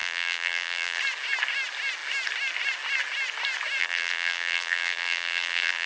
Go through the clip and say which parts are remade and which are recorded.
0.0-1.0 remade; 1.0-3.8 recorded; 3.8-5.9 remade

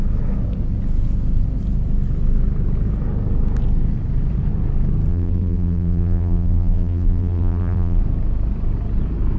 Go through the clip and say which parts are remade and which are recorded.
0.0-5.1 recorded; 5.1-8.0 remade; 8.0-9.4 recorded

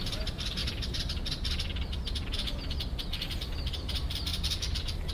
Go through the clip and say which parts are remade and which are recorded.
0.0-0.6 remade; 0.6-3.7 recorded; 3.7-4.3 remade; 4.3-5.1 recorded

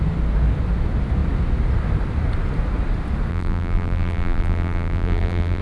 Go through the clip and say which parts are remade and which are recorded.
0.0-3.3 recorded; 3.3-5.6 remade